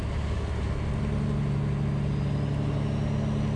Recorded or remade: recorded